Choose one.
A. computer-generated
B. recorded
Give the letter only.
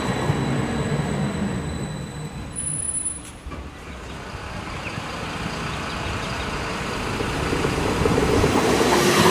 B